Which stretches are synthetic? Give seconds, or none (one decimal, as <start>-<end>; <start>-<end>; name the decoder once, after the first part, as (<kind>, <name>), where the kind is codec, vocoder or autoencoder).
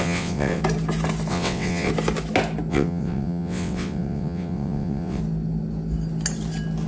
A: 0.0-0.6 (vocoder, WaveNeXt); 1.3-1.9; 2.7-5.2